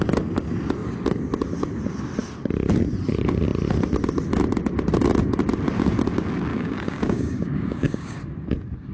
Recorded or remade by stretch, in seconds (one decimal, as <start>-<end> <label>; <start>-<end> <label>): 0.0-6.5 recorded; 6.5-8.2 remade; 8.2-8.9 recorded